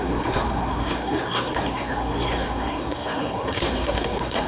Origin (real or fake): fake